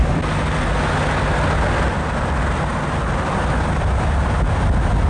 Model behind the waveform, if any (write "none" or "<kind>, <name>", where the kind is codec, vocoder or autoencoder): none